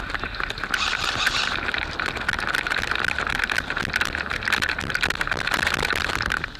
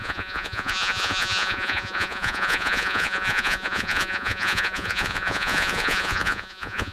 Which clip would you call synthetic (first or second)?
second